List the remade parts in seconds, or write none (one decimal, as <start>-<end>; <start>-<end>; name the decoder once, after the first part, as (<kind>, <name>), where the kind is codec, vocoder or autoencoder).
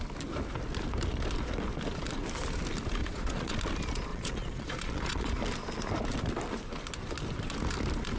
3.0-3.5 (vocoder, Vocos); 4.1-5.3